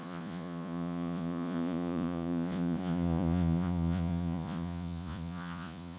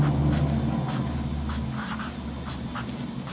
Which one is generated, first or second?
first